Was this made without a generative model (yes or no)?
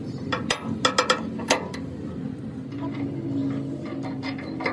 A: yes